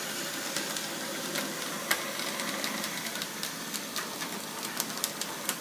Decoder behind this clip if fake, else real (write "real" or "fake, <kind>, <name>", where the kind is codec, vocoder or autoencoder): real